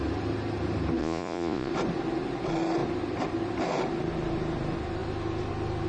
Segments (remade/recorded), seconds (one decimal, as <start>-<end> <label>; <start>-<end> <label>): 0.0-1.0 recorded; 1.0-1.7 remade; 1.7-5.9 recorded